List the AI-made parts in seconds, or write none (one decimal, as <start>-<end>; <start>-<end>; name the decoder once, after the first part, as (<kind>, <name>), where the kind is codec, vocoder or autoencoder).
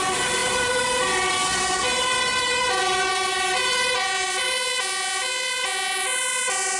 none